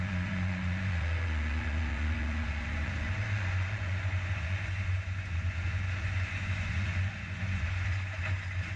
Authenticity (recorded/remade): remade